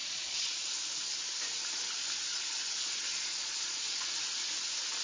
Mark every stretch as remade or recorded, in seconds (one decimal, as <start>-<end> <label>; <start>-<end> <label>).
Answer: 0.0-0.7 remade; 0.7-2.3 recorded; 2.3-4.1 remade; 4.1-5.0 recorded